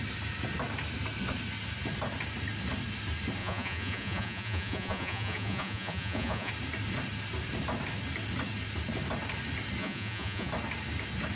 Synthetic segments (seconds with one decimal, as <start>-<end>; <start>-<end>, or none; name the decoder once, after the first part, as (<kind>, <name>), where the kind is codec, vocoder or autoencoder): 3.4-6.5 (vocoder, Vocos); 9.8-10.5